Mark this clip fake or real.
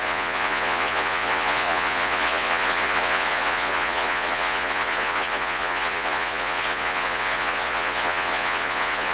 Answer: fake